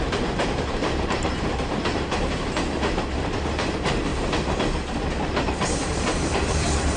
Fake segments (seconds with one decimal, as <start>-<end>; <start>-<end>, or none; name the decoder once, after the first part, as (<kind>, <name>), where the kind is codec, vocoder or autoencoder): 0.0-4.1 (vocoder, BigVGAN v2); 5.5-7.0